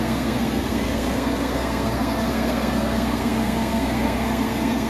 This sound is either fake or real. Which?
fake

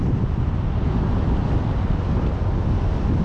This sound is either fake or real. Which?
real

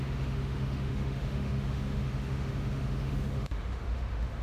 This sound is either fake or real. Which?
fake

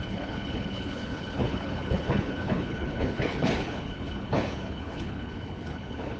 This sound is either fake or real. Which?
fake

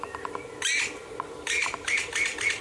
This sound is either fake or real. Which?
real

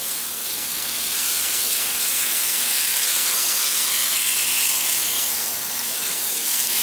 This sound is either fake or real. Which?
fake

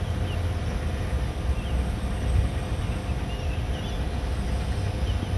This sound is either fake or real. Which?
real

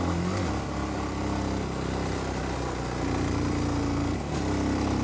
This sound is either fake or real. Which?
real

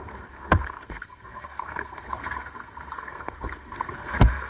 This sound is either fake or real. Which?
fake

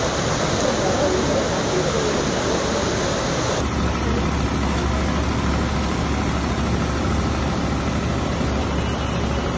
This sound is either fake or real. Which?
real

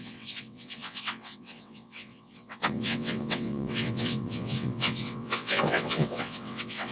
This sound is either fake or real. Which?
fake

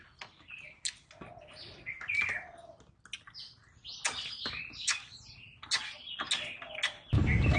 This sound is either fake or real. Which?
real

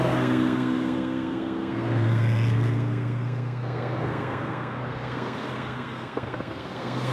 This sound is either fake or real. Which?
fake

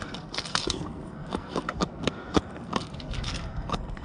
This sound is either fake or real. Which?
fake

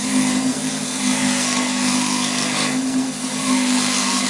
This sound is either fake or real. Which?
fake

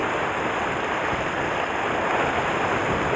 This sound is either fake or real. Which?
real